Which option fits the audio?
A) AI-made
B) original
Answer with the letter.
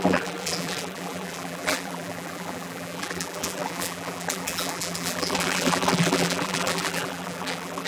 A